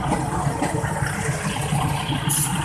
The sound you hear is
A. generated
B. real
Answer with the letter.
B